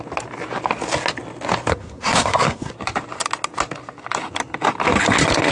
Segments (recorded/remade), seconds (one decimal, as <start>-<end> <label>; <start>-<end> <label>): 0.0-1.7 recorded; 1.7-2.7 remade; 2.7-5.5 recorded